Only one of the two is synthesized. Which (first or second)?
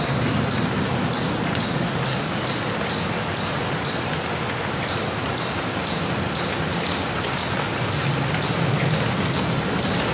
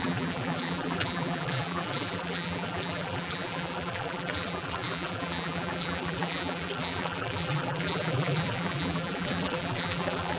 second